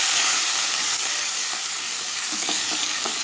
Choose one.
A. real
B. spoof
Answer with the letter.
B